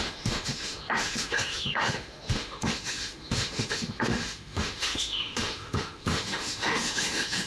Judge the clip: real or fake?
fake